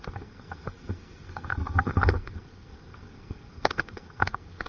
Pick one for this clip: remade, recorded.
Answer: remade